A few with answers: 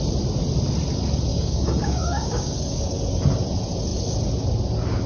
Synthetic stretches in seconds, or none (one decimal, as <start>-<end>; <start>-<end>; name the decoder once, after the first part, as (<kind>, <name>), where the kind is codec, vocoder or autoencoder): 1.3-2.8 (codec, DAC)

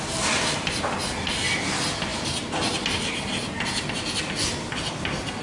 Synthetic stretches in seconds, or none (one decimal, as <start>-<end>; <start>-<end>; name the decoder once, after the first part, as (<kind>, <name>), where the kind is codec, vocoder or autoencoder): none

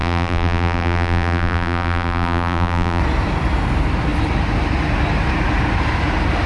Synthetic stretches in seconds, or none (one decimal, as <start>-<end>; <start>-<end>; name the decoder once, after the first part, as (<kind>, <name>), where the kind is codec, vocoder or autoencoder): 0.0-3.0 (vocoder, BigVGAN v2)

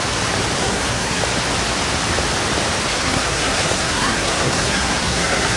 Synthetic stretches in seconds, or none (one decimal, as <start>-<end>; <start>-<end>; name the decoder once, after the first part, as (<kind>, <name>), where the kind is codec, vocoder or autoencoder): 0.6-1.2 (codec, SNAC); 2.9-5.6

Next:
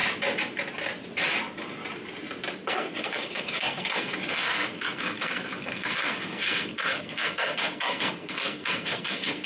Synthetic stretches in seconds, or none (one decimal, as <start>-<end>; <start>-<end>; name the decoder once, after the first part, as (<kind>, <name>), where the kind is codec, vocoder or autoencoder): 2.7-9.5 (codec, SNAC)

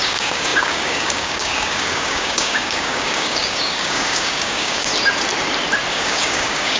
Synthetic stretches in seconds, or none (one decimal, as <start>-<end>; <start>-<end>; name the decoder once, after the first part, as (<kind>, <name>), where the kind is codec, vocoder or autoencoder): 0.0-4.9 (codec, DAC); 5.9-6.8